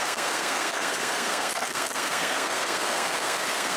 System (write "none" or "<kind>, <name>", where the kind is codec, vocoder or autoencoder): codec, SNAC